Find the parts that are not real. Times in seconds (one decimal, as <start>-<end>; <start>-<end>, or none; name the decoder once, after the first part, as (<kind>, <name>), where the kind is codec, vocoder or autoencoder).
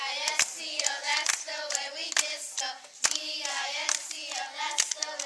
none